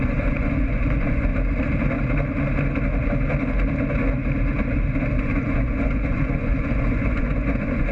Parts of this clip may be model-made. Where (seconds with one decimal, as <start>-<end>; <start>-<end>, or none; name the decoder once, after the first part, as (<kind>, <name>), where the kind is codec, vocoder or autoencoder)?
0.0-1.3 (vocoder, Vocos); 5.2-7.9